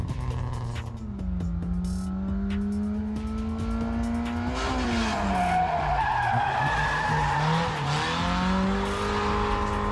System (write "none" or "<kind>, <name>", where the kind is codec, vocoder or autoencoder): none